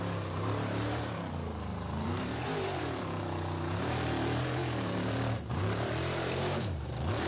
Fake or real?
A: fake